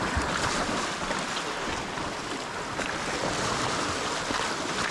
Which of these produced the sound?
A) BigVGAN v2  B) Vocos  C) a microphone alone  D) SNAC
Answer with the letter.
C